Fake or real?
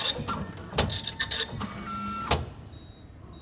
real